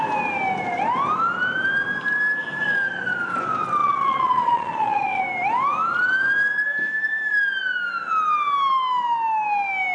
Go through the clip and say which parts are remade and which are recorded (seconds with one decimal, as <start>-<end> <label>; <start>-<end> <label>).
0.0-3.8 recorded; 3.8-5.2 remade; 5.2-9.9 recorded